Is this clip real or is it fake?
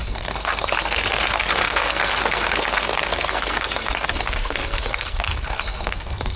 fake